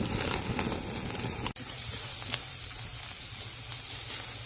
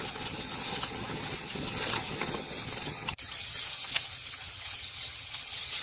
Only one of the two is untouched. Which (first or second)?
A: first